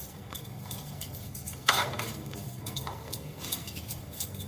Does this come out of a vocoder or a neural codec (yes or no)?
yes